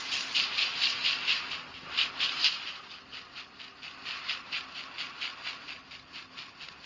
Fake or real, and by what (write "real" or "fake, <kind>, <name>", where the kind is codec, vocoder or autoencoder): real